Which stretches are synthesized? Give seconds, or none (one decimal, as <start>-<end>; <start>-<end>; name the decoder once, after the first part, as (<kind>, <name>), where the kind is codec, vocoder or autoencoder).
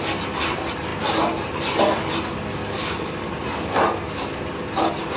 2.6-3.3 (codec, DAC)